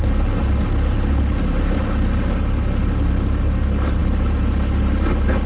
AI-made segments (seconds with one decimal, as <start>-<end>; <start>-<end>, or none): none